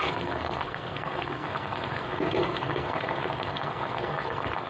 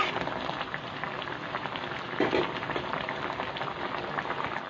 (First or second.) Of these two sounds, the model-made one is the first